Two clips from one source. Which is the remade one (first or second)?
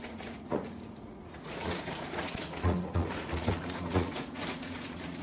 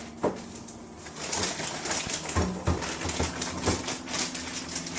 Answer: first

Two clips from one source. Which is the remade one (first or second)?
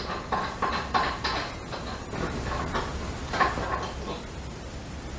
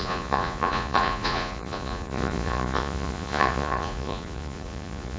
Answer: second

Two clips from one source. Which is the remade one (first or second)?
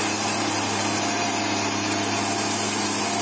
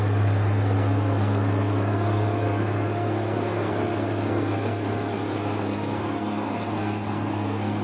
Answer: second